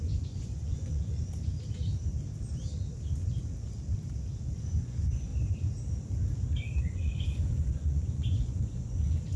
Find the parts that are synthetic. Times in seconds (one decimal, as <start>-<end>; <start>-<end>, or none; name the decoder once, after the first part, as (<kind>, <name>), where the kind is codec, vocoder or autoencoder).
0.0-1.5 (vocoder, Vocos); 4.4-5.3; 6.8-9.4